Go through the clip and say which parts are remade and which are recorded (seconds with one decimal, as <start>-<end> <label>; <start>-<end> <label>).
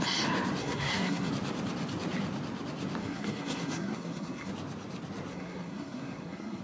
0.0-0.6 recorded; 0.6-1.3 remade; 1.3-3.0 recorded; 3.0-4.5 remade; 4.5-5.3 recorded; 5.3-6.6 remade